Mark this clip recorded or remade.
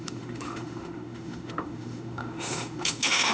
remade